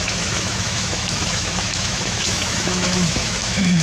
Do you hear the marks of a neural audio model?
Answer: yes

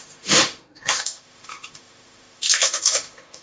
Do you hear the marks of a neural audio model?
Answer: yes